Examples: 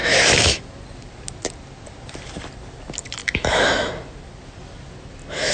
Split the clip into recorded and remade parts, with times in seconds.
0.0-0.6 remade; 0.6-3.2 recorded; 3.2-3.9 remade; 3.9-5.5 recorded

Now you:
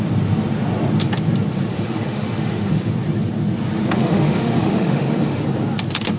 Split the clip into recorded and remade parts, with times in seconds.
0.0-1.7 recorded; 1.7-2.9 remade; 2.9-4.0 recorded; 4.0-5.4 remade; 5.4-6.2 recorded

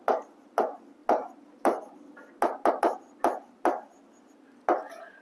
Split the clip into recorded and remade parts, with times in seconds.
0.0-5.2 recorded